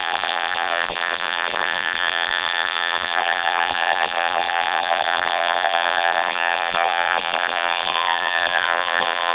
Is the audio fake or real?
fake